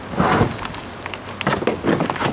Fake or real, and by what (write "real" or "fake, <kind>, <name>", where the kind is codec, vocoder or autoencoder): real